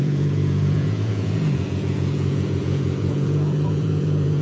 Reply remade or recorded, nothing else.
remade